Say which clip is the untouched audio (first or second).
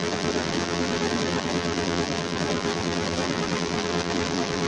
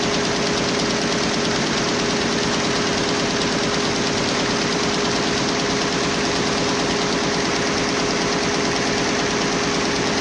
second